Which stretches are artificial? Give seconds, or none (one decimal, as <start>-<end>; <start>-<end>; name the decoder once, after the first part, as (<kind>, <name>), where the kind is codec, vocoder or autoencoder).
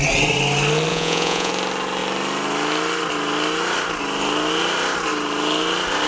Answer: 0.9-1.5 (vocoder, Vocos)